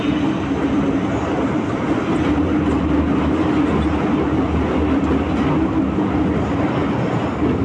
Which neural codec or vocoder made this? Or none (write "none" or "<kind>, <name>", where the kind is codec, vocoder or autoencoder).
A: none